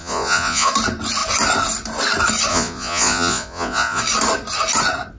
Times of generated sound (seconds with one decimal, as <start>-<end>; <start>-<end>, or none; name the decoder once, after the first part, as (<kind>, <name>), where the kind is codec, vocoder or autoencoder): 0.0-0.7 (vocoder, Vocos); 2.5-4.0